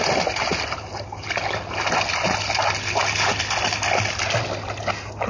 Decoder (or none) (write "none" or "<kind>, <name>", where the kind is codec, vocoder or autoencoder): none